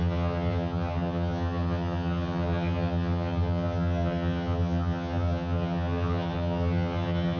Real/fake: fake